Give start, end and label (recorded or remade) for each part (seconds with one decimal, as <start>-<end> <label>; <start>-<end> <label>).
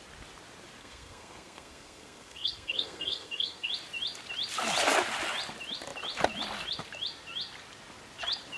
0.0-0.8 recorded; 0.8-3.7 remade; 3.7-8.6 recorded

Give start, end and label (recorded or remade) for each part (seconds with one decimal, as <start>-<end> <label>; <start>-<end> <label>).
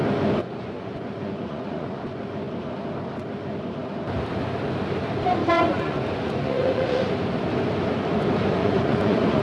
0.0-0.4 recorded; 0.4-2.3 remade; 2.3-5.4 recorded; 5.4-7.1 remade; 7.1-8.6 recorded; 8.6-9.4 remade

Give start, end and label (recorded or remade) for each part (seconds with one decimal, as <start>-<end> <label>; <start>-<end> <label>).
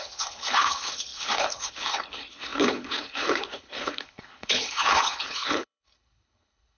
0.0-6.8 remade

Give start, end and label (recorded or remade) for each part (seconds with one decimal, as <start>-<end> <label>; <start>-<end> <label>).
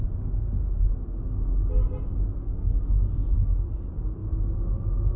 0.0-2.4 recorded; 2.4-3.8 remade; 3.8-5.2 recorded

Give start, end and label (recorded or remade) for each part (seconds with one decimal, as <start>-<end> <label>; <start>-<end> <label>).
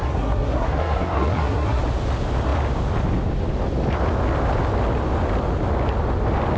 0.0-1.8 remade; 1.8-6.6 recorded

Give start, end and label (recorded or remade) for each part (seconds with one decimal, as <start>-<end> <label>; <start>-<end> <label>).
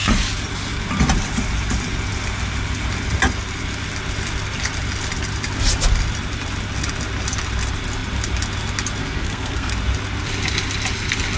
0.0-9.0 recorded; 9.0-9.7 remade; 9.7-11.4 recorded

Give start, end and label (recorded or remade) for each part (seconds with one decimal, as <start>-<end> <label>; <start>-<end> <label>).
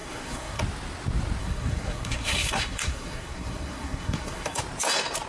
0.0-0.6 remade; 0.6-1.4 recorded; 1.4-4.6 remade; 4.6-5.3 recorded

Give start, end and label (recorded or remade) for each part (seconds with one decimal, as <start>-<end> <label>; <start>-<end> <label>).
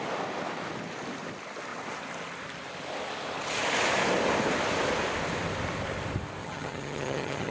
0.0-6.4 recorded; 6.4-7.5 remade